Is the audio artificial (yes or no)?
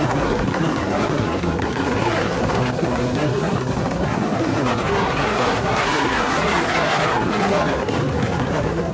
yes